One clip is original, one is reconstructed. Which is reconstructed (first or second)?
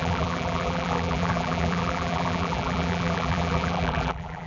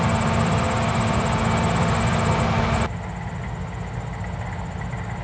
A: first